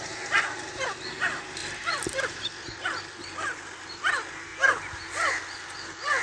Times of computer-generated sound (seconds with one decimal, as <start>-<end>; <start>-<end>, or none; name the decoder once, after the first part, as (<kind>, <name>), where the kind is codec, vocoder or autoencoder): 1.6-2.4 (vocoder, BigVGAN v2); 4.5-5.3